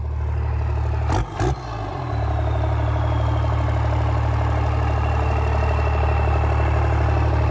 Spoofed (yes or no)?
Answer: no